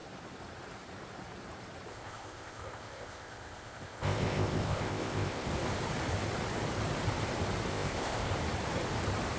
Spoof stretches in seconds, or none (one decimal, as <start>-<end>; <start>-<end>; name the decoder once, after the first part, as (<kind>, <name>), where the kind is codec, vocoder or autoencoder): 1.9-5.5 (codec, ZipCodec); 7.7-8.3

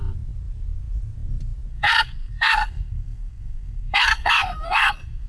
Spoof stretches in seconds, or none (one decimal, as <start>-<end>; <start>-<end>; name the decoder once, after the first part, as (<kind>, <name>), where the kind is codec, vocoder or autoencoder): 1.7-5.3 (codec, SNAC)

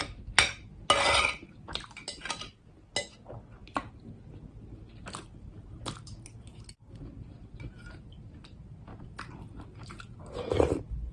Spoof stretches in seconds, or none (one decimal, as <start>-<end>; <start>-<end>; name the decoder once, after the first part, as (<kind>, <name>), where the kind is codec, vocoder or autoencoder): 8.9-10.2 (vocoder, BigVGAN v2)